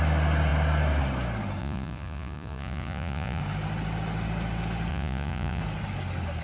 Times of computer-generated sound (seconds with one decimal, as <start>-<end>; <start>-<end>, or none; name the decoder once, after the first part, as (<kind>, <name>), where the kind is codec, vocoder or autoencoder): 1.6-3.4 (vocoder, Vocos); 4.9-5.6